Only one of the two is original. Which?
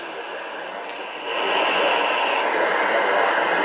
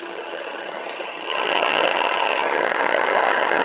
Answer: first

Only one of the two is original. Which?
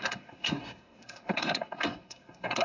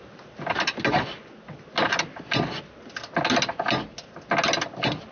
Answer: second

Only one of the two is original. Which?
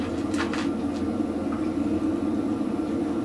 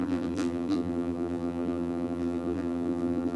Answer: first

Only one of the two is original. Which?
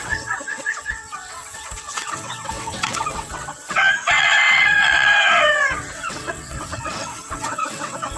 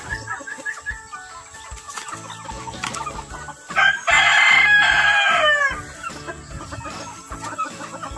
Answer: second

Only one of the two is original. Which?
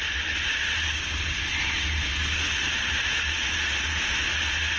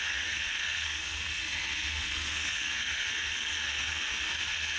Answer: first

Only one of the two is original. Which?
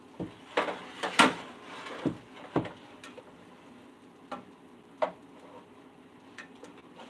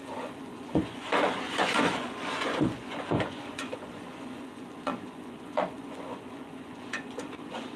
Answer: first